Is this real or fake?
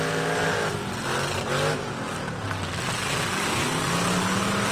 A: real